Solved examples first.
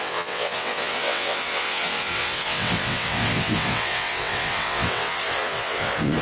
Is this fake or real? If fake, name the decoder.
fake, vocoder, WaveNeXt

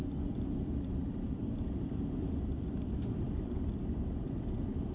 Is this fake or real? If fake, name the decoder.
fake, vocoder, BigVGAN v2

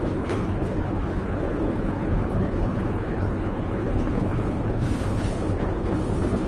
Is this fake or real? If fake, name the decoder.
fake, codec, HILCodec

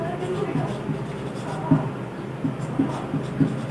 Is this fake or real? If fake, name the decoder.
real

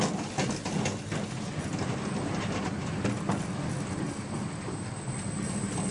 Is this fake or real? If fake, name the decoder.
real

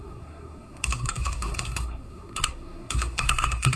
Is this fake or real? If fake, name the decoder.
fake, codec, SNAC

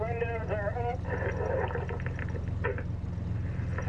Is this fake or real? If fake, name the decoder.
real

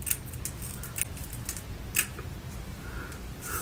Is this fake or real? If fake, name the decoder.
real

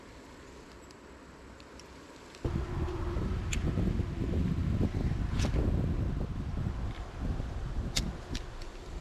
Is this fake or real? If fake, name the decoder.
real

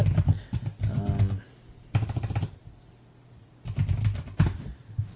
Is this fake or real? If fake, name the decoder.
real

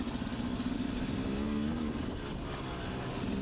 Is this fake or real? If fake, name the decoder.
real